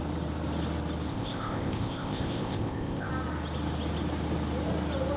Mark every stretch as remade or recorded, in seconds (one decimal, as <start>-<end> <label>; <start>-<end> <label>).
0.0-1.1 recorded; 1.1-3.1 remade; 3.1-5.2 recorded